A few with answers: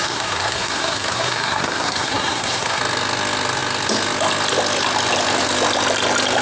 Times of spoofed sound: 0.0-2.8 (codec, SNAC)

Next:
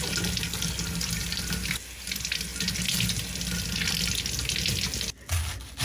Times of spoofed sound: none

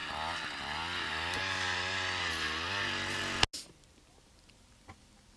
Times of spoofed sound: none

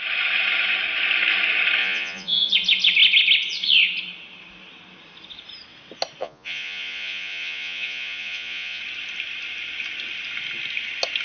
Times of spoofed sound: 1.8-2.5 (vocoder, Vocos); 6.2-8.8

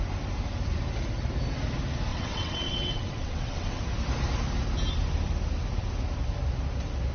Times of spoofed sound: 2.1-3.8 (vocoder, WaveNeXt)

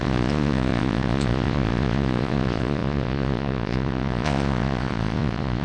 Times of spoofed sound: 0.0-5.6 (vocoder, Vocos)